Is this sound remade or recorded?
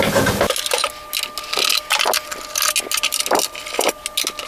recorded